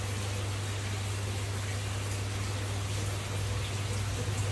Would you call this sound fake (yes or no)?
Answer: no